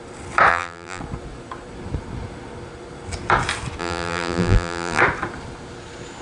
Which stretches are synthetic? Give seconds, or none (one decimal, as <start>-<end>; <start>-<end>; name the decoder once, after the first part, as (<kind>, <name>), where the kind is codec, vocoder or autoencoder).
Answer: 0.5-1.0 (vocoder, BigVGAN v2); 3.8-5.0